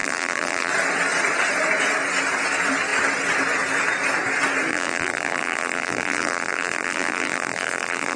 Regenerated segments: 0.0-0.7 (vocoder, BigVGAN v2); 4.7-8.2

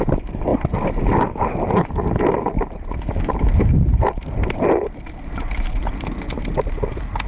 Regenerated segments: none

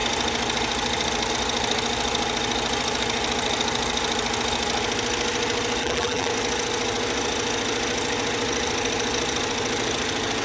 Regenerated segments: 5.8-6.3 (vocoder, BigVGAN v2)

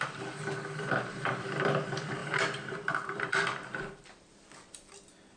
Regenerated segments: 0.0-5.4 (vocoder, BigVGAN v2)

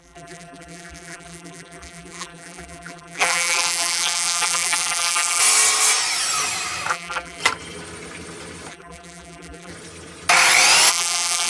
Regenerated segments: 0.0-5.4 (vocoder, BigVGAN v2); 6.9-7.4; 8.7-9.7; 10.9-11.5

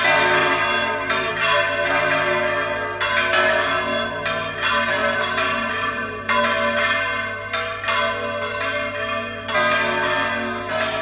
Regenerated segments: 0.4-1.3 (vocoder, BigVGAN v2); 5.0-6.3